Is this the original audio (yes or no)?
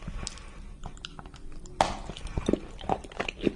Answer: yes